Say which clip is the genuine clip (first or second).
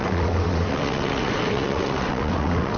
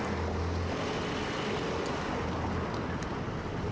second